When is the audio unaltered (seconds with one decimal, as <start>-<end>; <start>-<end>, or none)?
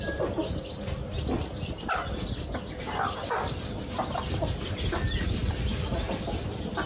0.0-6.9